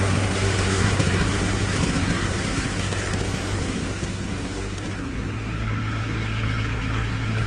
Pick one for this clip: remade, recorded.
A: remade